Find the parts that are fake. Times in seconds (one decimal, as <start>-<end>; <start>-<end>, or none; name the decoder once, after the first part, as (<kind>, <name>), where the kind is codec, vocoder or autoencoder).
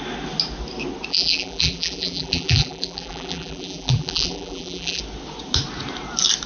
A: 1.1-5.0 (vocoder, BigVGAN v2)